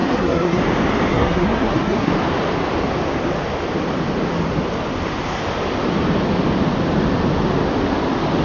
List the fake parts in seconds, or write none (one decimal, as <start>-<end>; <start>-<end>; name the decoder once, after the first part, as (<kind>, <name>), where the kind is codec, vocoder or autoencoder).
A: 0.0-0.6 (codec, SNAC); 1.1-2.1